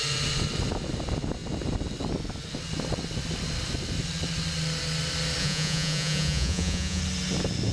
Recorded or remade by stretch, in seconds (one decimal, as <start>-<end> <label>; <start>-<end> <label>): 0.0-5.4 recorded; 5.4-7.0 remade; 7.0-7.7 recorded